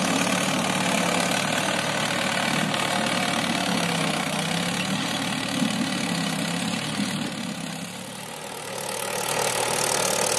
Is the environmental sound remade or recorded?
recorded